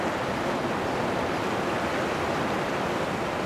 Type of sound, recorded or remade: recorded